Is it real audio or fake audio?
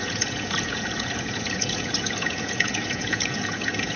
fake